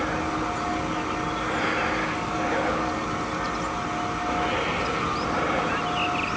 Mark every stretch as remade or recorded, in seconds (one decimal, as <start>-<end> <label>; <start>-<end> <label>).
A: 0.0-2.0 recorded; 2.0-2.9 remade; 2.9-6.4 recorded